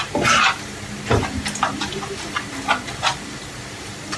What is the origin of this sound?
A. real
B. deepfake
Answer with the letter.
A